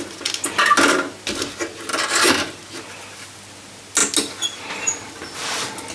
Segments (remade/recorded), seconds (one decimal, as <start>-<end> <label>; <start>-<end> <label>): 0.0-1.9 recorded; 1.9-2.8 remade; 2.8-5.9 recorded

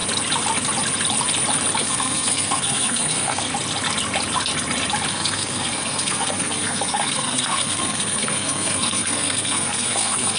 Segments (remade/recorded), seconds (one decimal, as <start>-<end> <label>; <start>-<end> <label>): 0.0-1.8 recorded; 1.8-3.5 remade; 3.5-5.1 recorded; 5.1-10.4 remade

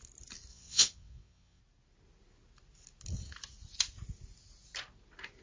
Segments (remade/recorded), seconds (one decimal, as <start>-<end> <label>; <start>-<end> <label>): 0.0-0.5 recorded; 0.5-1.6 remade; 1.6-5.4 recorded